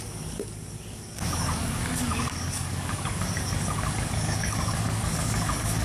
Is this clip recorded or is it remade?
remade